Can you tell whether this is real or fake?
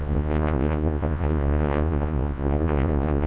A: fake